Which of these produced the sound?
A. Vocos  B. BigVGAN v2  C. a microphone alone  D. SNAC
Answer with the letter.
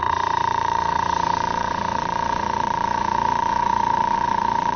A